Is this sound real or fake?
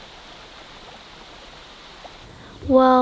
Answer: real